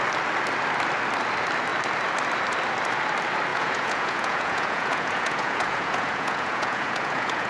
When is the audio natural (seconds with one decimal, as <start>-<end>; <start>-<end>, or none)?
0.0-3.5